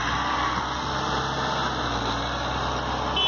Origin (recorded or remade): recorded